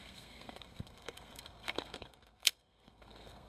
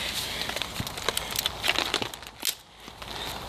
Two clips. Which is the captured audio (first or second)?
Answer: second